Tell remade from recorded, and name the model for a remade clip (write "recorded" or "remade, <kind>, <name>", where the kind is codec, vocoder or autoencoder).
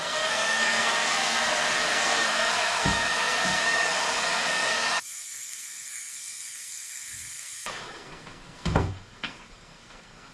remade, codec, SNAC